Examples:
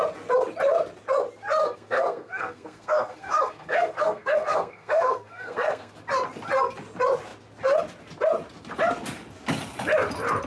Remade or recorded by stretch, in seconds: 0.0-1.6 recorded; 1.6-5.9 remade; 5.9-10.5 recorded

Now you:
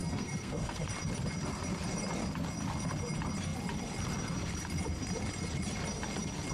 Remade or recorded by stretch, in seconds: 0.0-0.9 remade; 0.9-6.5 recorded

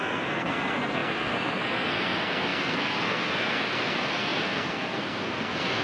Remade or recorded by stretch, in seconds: 0.0-5.8 remade

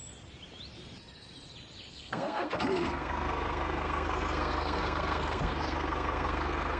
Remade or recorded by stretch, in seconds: 0.0-1.9 recorded; 1.9-6.8 remade

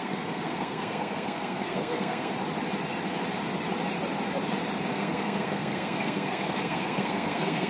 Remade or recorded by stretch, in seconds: 0.0-2.3 remade; 2.3-4.9 recorded; 4.9-7.7 remade